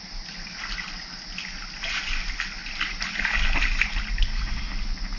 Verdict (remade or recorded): recorded